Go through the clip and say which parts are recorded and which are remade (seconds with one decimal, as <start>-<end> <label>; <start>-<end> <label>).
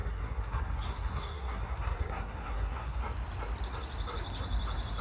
0.0-3.0 remade; 3.0-5.0 recorded